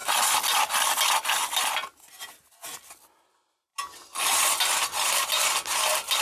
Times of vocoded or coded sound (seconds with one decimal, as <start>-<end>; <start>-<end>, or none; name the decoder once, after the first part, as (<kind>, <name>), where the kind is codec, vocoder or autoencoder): none